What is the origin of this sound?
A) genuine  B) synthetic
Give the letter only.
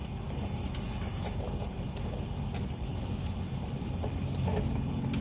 A